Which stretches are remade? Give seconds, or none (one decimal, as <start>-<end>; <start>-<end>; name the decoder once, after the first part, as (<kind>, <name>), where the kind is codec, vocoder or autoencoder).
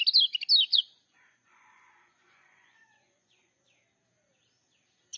0.7-3.6 (vocoder, Vocos)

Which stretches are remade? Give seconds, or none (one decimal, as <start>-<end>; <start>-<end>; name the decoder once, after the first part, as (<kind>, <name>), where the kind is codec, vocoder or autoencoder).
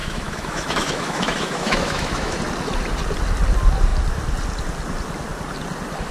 0.0-2.4 (autoencoder, DAC-VAE)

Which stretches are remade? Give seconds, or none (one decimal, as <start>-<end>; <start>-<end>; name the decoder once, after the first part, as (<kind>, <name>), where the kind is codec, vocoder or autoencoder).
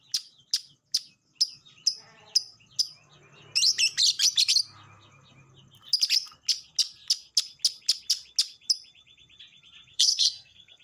9.9-10.8 (codec, SNAC)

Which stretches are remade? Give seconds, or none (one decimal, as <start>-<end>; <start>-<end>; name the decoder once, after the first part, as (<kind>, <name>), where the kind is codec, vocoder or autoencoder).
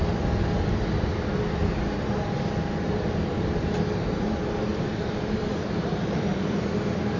1.6-2.4 (vocoder, BigVGAN v2); 4.7-6.6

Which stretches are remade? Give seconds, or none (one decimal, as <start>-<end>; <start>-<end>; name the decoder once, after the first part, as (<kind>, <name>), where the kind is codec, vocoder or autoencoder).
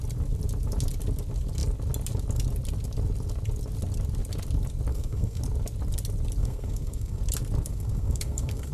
4.9-5.4 (codec, SNAC); 6.4-7.2; 7.7-8.7